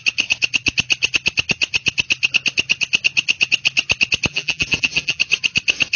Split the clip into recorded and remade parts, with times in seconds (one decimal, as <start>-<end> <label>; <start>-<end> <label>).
0.0-4.3 recorded; 4.3-5.2 remade; 5.2-6.0 recorded